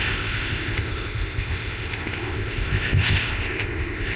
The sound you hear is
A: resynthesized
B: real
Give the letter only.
A